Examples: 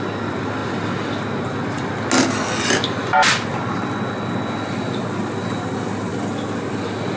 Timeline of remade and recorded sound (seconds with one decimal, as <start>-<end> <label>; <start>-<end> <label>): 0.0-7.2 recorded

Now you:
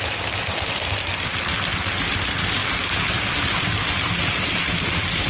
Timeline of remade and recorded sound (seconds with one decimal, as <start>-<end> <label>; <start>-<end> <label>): 0.0-5.3 recorded

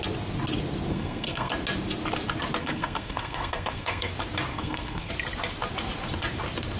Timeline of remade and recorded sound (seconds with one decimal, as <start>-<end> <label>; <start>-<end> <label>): 0.0-0.9 recorded; 0.9-1.5 remade; 1.5-2.6 recorded; 2.6-4.1 remade; 4.1-4.5 recorded; 4.5-5.1 remade; 5.1-6.8 recorded